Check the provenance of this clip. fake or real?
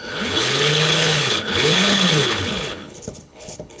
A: fake